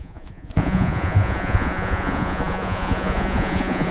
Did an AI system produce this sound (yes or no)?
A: yes